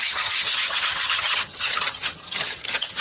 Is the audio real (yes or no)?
no